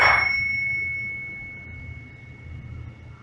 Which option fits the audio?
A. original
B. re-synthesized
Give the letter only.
A